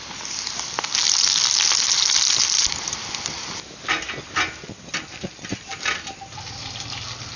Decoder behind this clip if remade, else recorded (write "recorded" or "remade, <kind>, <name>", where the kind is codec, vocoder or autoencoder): recorded